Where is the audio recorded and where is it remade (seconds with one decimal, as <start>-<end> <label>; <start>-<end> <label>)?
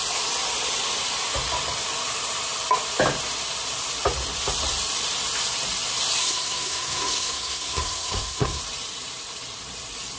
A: 0.0-6.2 recorded; 6.2-8.6 remade; 8.6-10.2 recorded